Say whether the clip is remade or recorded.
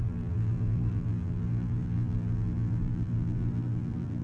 remade